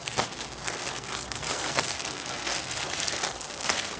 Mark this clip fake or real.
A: fake